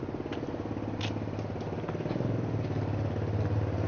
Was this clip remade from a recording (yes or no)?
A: no